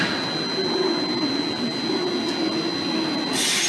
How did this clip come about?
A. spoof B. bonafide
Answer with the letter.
B